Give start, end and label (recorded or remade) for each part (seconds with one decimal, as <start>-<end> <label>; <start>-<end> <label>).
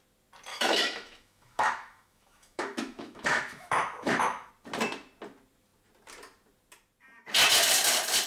0.0-0.5 recorded; 0.5-4.5 remade; 4.5-8.3 recorded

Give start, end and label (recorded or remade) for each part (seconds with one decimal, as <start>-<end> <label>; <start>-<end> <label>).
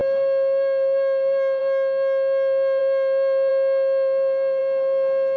0.0-5.4 recorded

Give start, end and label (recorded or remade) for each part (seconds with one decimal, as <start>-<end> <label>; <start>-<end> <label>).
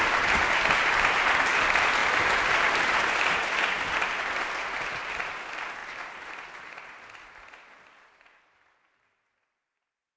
0.0-10.2 recorded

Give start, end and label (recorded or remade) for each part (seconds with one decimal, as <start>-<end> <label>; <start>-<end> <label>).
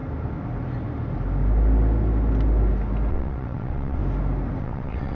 0.0-3.1 recorded; 3.1-4.0 remade; 4.0-4.6 recorded; 4.6-5.1 remade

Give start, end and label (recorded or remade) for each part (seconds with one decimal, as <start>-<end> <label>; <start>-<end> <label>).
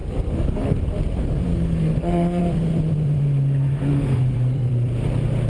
0.0-0.8 remade; 0.8-1.5 recorded; 1.5-2.4 remade; 2.4-3.9 recorded; 3.9-4.7 remade; 4.7-5.5 recorded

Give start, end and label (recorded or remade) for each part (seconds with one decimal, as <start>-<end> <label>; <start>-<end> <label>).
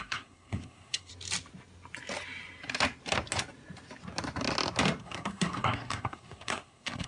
0.0-1.1 remade; 1.1-5.0 recorded; 5.0-7.1 remade